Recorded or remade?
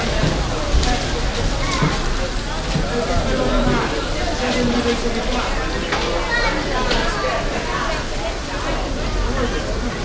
recorded